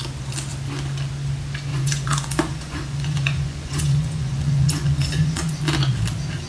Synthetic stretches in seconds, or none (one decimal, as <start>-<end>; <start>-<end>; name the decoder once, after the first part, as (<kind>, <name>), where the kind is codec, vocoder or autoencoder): 1.7-5.6 (vocoder, Vocos)